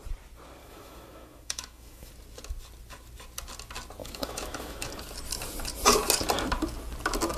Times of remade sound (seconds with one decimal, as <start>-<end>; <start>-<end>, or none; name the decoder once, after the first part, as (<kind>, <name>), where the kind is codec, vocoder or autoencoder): 0.6-2.1 (autoencoder, DAC-VAE); 4.0-4.9